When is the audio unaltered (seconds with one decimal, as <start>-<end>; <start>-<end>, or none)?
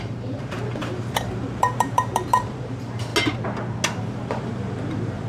3.1-4.0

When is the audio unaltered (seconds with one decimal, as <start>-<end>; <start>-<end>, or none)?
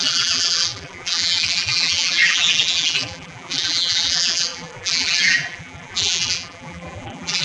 none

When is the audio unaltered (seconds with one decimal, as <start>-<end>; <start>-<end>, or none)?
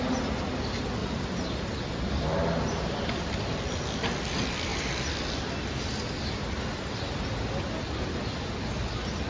0.0-9.3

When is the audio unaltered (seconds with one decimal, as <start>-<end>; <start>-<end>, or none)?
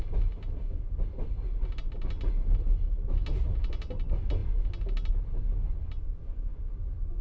0.0-7.2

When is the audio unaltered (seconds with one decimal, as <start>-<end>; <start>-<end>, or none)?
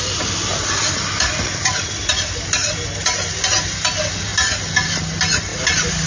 0.0-0.5; 3.5-5.5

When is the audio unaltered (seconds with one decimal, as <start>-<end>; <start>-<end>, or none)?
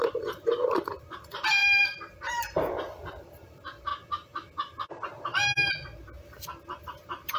1.6-2.3; 3.9-6.8